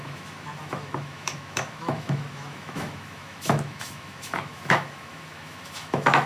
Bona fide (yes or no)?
no